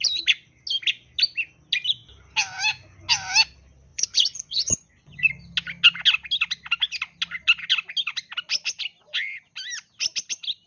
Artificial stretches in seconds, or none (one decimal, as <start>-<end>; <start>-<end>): 3.9-5.3